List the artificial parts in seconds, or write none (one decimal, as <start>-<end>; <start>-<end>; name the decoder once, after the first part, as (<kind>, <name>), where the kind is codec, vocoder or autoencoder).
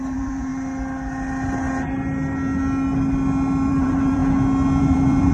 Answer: 0.0-0.5 (vocoder, BigVGAN v2); 3.7-4.2; 4.8-5.3